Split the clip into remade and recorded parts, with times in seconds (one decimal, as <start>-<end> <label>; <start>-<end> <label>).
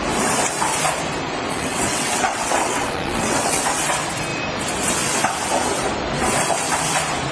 0.0-1.5 recorded; 1.5-3.6 remade; 3.6-7.3 recorded